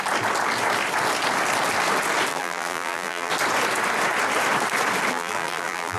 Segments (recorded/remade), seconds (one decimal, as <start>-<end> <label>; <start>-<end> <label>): 0.0-2.3 recorded; 2.3-3.3 remade; 3.3-5.1 recorded; 5.1-6.0 remade